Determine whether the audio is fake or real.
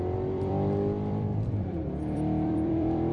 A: fake